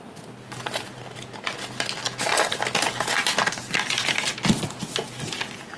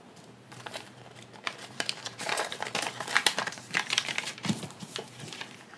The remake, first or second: second